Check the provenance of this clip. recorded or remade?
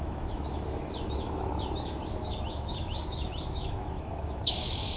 remade